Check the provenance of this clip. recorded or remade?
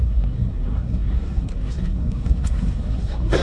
remade